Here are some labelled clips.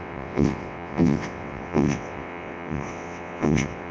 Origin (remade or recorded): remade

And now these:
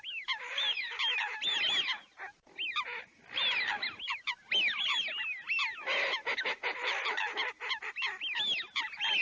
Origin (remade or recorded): recorded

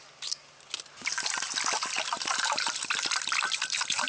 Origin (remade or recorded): recorded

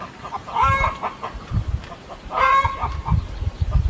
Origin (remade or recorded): recorded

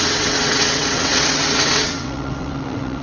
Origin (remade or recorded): remade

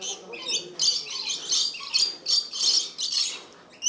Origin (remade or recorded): recorded